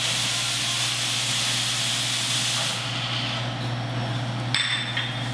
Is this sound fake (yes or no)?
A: no